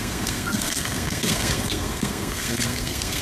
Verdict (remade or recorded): remade